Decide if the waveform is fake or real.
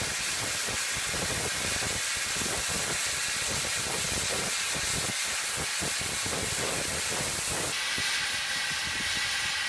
real